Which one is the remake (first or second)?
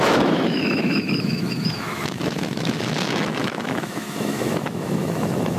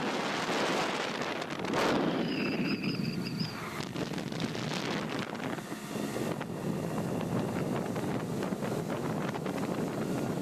first